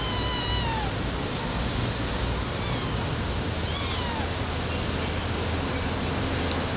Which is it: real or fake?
real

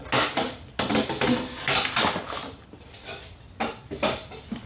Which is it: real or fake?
real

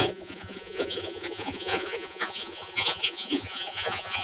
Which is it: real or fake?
fake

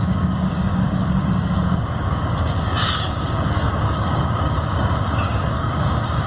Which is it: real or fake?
fake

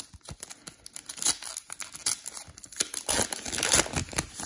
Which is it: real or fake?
real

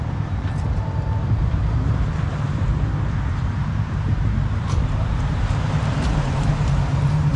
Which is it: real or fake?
fake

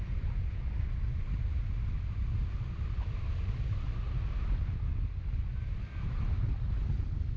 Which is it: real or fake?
real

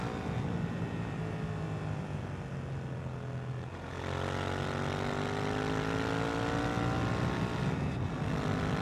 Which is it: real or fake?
real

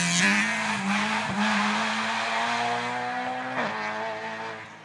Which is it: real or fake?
real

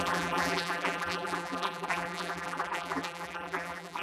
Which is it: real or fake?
fake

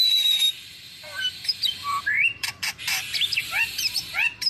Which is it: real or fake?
fake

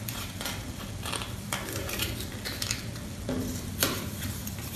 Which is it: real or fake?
fake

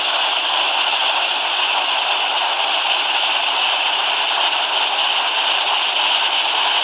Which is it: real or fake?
real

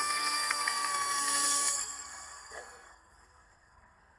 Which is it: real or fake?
fake